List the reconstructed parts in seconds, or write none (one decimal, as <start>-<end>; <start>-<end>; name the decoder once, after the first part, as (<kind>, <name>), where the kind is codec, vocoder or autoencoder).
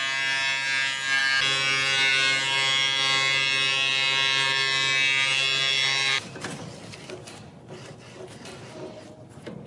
none